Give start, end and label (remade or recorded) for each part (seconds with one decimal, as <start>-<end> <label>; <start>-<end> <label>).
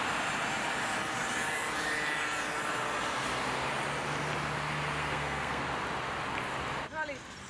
0.0-5.0 recorded; 5.0-5.6 remade; 5.6-7.5 recorded